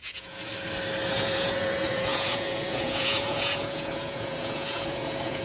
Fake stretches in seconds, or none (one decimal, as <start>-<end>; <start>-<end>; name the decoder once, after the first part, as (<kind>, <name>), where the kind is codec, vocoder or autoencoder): 0.0-0.5 (vocoder, Vocos); 1.1-5.4